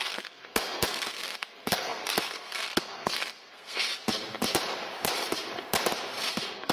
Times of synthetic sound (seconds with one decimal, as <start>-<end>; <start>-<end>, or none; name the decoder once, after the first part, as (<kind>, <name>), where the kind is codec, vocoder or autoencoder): 0.0-3.9 (codec, SNAC); 6.3-6.7